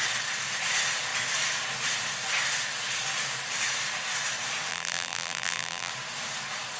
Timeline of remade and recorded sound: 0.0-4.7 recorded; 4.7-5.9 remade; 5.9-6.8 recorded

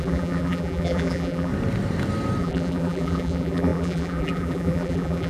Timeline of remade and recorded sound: 0.0-1.5 remade; 1.5-2.4 recorded; 2.4-5.3 remade

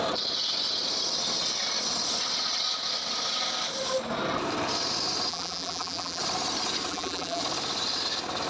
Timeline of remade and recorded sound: 0.0-5.3 recorded; 5.3-6.2 remade; 6.2-6.9 recorded; 6.9-7.4 remade; 7.4-8.5 recorded

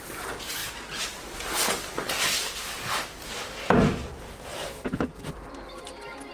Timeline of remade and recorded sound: 0.0-4.5 recorded; 4.5-5.5 remade; 5.5-6.3 recorded

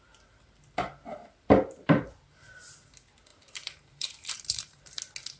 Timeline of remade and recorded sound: 0.0-3.3 recorded; 3.3-5.0 remade; 5.0-5.4 recorded

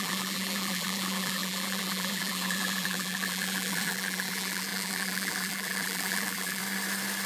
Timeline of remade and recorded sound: 0.0-6.6 remade; 6.6-7.3 recorded